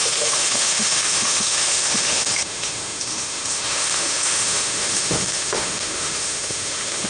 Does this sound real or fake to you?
fake